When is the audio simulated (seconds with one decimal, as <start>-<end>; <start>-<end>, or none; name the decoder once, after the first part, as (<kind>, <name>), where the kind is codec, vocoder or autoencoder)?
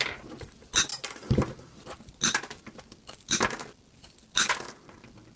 none